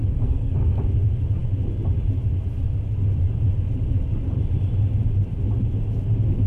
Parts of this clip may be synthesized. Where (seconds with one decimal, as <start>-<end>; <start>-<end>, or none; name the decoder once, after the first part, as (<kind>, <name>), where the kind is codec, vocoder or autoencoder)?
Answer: 0.0-0.8 (codec, SNAC)